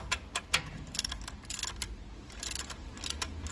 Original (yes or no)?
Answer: yes